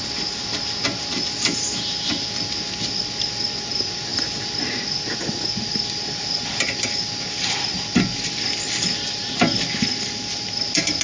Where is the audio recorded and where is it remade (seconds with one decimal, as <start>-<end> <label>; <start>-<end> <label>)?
0.0-11.0 recorded